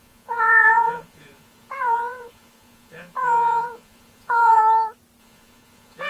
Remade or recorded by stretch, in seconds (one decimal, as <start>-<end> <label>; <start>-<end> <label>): 0.0-4.6 remade; 4.6-5.2 recorded; 5.2-6.1 remade